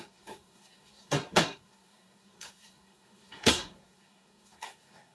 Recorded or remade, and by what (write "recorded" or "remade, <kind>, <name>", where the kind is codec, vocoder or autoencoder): remade, codec, SNAC